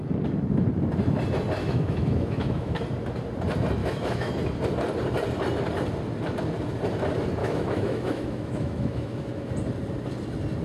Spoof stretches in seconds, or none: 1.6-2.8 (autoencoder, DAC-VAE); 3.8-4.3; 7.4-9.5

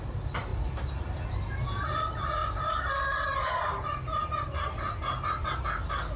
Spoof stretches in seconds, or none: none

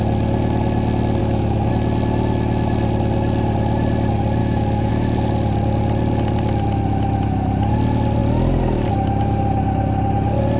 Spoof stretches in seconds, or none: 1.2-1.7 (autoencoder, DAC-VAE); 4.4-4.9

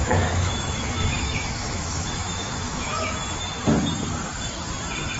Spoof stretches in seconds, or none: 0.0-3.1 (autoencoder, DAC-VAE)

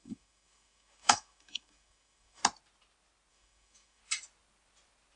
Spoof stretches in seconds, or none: 0.0-2.4 (autoencoder, DAC-VAE); 3.3-4.0

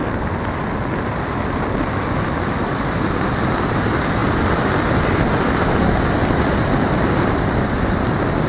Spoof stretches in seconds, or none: none

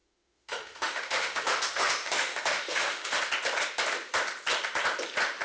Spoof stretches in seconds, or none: 0.0-3.2 (autoencoder, DAC-VAE)